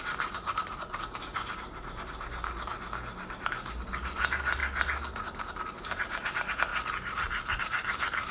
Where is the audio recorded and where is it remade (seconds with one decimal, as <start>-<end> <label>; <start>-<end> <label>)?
0.0-2.7 remade; 2.7-3.3 recorded; 3.3-4.6 remade; 4.6-5.2 recorded; 5.2-6.7 remade; 6.7-7.6 recorded; 7.6-8.3 remade